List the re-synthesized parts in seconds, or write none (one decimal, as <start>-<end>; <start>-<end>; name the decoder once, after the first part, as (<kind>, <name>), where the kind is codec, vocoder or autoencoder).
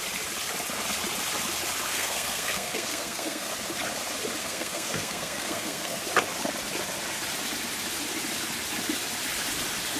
1.9-3.5 (codec, SNAC); 4.4-6.0